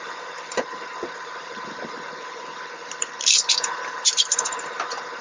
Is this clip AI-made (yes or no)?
yes